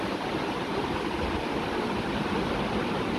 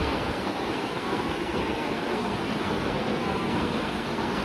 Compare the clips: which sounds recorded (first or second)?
first